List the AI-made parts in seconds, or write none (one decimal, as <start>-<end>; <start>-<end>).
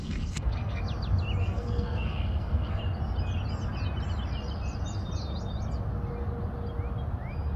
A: 0.0-0.8; 1.4-2.8